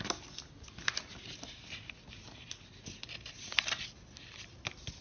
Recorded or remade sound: recorded